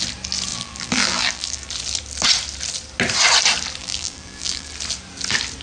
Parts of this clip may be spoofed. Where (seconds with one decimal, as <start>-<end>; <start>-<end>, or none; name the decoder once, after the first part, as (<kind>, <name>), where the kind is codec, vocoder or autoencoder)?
0.5-1.7 (vocoder, BigVGAN v2); 3.8-4.7